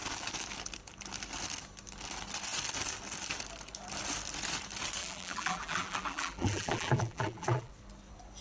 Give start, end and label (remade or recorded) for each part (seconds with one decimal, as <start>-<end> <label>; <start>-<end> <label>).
0.0-5.0 recorded; 5.0-7.7 remade; 7.7-8.4 recorded